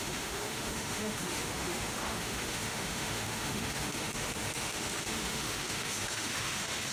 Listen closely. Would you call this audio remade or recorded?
remade